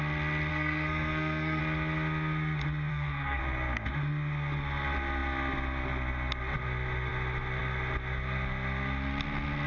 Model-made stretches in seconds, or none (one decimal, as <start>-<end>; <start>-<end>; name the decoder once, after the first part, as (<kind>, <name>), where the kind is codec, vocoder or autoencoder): 0.5-1.6 (codec, SNAC); 2.9-3.4

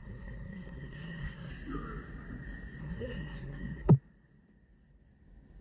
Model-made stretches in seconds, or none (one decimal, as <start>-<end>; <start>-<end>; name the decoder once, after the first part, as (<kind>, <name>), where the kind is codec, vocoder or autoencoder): 0.0-1.5 (codec, SNAC); 2.8-3.9

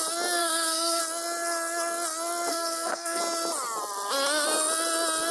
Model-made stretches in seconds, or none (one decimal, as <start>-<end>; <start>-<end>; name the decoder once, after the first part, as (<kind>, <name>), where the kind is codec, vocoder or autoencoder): 0.4-1.0 (codec, SNAC); 2.5-3.2

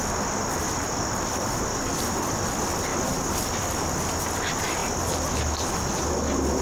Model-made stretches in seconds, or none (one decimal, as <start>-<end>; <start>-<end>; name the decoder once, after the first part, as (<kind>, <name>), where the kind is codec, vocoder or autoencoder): none

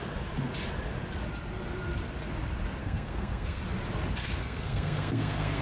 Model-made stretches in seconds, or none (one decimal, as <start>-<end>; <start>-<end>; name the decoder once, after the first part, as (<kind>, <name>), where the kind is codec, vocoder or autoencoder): 2.8-3.6 (codec, SNAC); 4.2-5.6